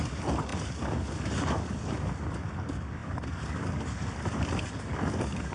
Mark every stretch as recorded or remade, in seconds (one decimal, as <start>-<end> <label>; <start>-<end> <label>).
0.0-5.5 remade